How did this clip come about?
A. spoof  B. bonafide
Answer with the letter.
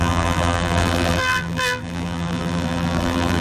A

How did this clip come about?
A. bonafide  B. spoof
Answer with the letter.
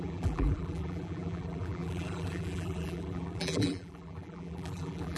B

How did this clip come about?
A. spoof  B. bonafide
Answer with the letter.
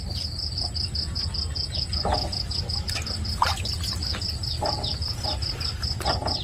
B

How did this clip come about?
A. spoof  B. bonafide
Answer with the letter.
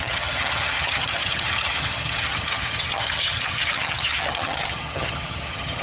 A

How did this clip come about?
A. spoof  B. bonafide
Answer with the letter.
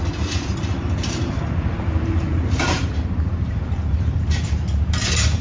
A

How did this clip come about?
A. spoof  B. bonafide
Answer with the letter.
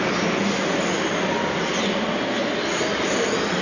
B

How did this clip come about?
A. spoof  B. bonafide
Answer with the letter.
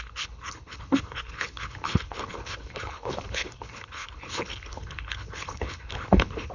A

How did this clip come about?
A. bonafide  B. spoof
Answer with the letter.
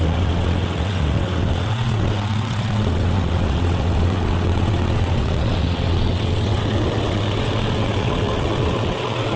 B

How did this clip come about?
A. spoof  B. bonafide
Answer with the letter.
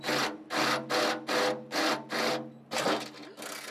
B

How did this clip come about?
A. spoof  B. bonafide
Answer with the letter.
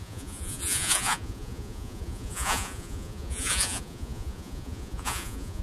A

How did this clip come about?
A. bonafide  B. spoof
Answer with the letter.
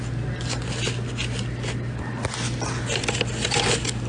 A